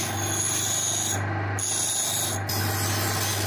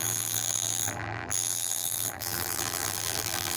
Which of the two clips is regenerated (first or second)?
second